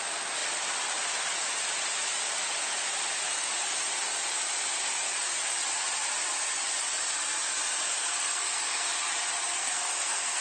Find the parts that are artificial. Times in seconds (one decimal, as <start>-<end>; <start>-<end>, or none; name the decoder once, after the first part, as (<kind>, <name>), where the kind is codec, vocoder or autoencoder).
7.9-8.9 (codec, SNAC); 9.6-10.4